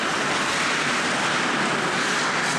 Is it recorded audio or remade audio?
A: recorded